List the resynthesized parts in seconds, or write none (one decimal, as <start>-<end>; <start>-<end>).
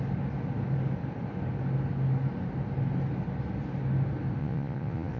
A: 4.4-5.2